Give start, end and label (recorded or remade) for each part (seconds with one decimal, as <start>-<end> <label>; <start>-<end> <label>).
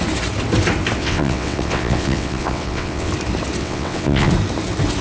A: 0.0-1.0 recorded; 1.0-3.1 remade; 3.1-3.6 recorded; 3.6-4.3 remade; 4.3-5.0 recorded